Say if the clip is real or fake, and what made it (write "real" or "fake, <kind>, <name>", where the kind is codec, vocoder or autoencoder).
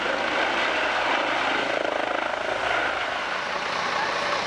real